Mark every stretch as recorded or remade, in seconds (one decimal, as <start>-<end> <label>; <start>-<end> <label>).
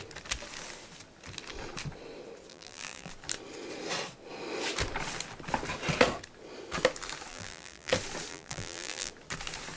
0.0-2.5 recorded; 2.5-3.1 remade; 3.1-7.3 recorded; 7.3-7.9 remade; 7.9-8.3 recorded; 8.3-9.1 remade; 9.1-9.8 recorded